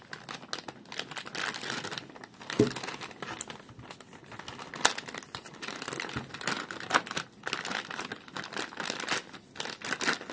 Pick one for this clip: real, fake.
real